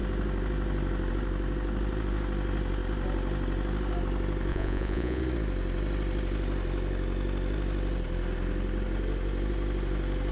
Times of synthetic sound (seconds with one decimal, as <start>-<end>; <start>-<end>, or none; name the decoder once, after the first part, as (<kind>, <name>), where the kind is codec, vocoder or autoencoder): 4.5-5.2 (vocoder, Vocos)